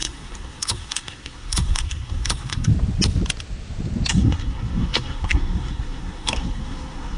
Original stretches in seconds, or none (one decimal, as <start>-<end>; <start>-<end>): 2.7-4.1